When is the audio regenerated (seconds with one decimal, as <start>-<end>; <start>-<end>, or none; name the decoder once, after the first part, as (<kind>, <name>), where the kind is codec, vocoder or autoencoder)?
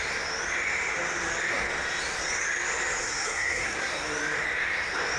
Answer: 3.0-3.9 (codec, SNAC)